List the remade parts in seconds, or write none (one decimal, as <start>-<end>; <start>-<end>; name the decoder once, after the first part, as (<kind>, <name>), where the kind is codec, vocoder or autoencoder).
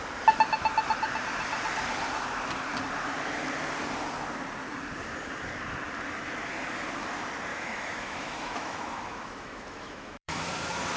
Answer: 7.5-10.4 (autoencoder, DAC-VAE)